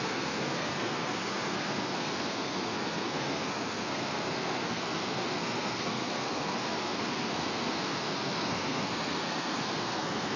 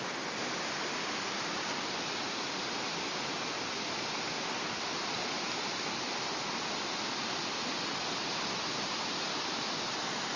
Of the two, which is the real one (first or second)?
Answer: second